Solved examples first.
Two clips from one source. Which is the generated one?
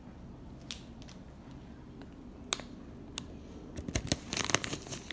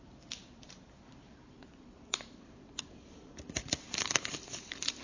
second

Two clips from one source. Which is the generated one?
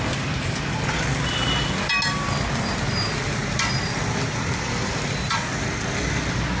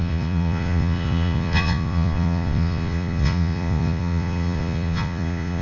second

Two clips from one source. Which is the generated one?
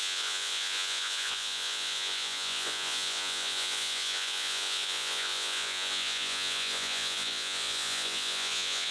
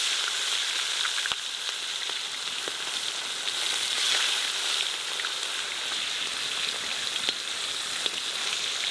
first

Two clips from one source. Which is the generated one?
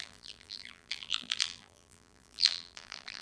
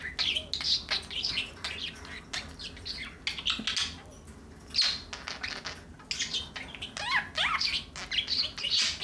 first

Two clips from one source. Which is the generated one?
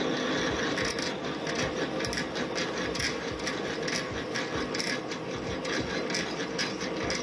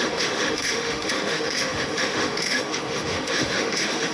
second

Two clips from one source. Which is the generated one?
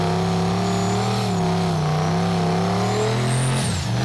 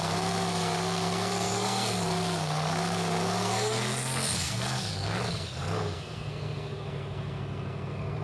second